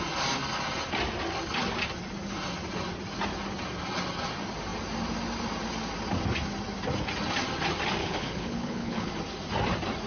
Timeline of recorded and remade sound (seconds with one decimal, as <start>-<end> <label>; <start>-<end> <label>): 0.0-8.0 recorded; 8.0-9.1 remade; 9.1-10.1 recorded